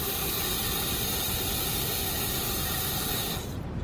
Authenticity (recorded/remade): recorded